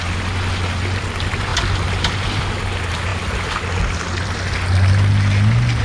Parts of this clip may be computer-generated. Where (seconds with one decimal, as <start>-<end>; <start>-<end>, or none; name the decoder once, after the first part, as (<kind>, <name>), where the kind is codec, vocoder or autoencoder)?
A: none